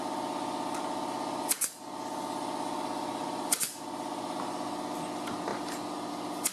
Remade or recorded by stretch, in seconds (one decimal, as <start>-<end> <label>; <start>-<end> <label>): 0.0-6.5 recorded